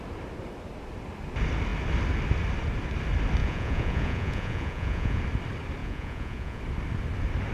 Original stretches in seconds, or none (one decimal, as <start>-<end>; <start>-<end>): 0.0-3.4; 5.2-5.8; 6.6-7.5